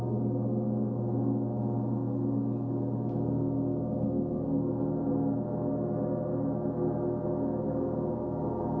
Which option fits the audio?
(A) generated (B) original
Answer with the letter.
B